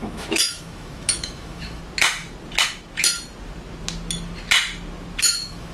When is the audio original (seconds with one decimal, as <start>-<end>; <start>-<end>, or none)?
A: 1.8-5.2